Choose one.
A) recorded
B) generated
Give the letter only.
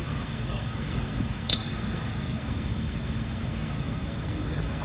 B